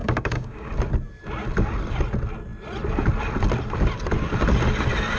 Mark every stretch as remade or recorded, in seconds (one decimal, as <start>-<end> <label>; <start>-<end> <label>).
0.0-0.7 remade; 0.7-5.2 recorded